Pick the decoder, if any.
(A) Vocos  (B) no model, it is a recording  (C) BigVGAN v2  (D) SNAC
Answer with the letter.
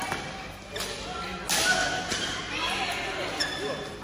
B